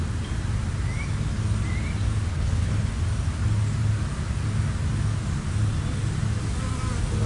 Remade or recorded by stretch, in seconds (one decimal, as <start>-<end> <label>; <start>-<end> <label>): 0.0-2.3 recorded; 2.3-2.9 remade; 2.9-7.3 recorded